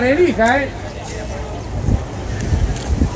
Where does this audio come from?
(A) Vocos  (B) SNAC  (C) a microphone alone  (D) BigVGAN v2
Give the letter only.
C